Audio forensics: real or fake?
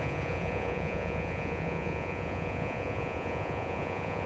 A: fake